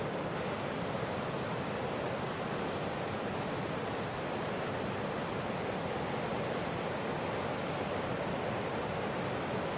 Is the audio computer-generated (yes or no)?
no